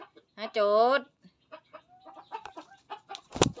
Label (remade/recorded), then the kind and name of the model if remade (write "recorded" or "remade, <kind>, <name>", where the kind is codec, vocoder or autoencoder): recorded